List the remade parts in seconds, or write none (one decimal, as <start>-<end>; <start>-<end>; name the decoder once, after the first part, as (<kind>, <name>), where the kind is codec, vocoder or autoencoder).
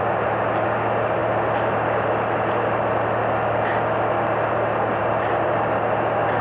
none